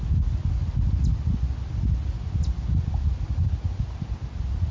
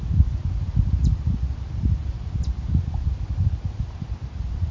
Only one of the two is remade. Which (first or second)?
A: second